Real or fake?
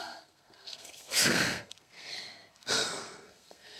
fake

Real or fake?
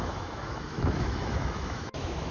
fake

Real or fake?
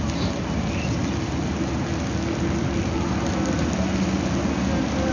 real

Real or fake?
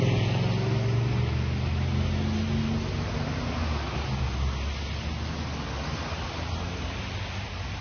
real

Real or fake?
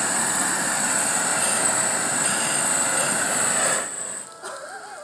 real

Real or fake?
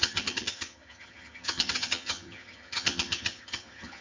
fake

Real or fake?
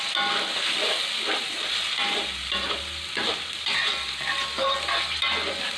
real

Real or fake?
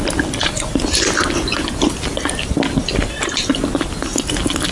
real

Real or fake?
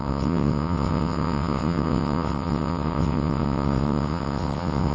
fake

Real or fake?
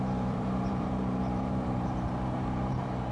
fake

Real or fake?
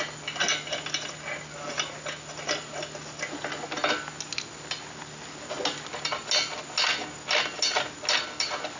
real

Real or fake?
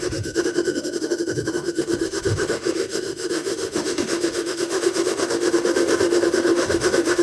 fake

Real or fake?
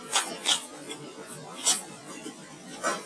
fake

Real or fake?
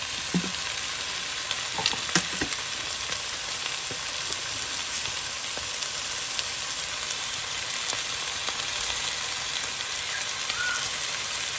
real